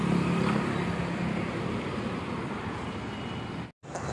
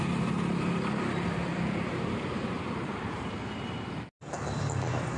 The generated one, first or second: second